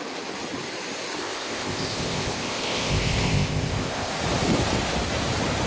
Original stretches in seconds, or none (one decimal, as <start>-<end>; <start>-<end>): 0.0-1.2; 4.1-5.7